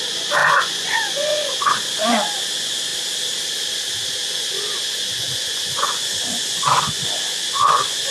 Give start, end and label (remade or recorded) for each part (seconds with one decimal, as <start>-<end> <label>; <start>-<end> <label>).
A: 0.0-2.9 remade; 2.9-4.1 recorded; 4.1-8.1 remade